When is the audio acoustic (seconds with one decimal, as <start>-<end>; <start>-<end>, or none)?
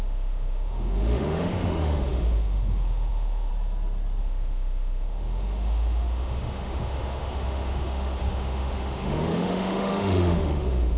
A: 3.5-4.2